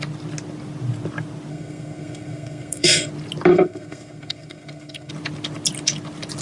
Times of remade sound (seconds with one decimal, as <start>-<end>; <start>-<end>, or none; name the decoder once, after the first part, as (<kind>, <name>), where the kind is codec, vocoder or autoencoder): 1.5-3.1 (codec, SNAC); 3.5-5.1